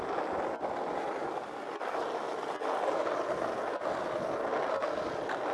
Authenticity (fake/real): real